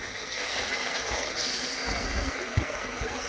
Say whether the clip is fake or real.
fake